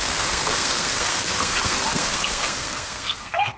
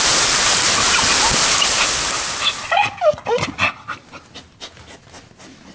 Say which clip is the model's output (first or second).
first